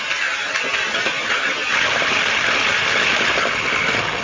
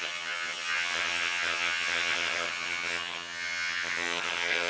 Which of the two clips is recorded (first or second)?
first